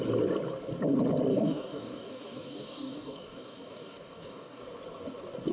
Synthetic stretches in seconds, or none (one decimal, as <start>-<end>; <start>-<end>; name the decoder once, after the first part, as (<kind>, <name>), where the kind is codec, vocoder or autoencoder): 1.3-4.6 (codec, DAC)